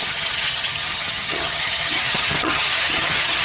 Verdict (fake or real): fake